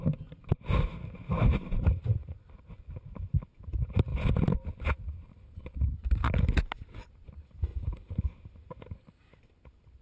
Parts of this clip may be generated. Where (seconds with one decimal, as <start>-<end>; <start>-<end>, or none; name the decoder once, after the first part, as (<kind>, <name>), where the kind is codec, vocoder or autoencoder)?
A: 4.1-5.8 (vocoder, BigVGAN v2); 7.7-8.2